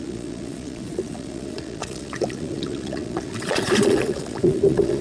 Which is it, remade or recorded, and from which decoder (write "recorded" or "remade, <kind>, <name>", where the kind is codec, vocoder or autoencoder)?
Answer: remade, vocoder, Vocos